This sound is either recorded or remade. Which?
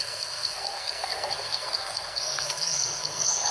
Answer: remade